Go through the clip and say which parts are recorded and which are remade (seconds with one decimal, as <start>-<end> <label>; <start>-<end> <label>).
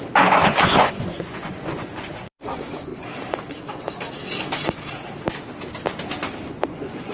0.0-2.9 remade; 2.9-6.5 recorded; 6.5-7.1 remade